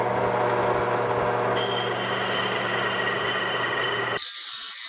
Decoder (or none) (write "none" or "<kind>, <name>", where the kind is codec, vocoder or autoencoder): none